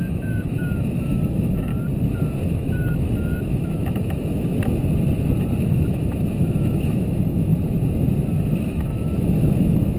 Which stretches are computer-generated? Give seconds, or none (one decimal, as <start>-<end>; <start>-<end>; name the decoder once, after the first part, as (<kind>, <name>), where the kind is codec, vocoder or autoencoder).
0.0-1.7 (autoencoder, DAC-VAE); 2.4-4.5; 5.6-7.5; 8.7-10.0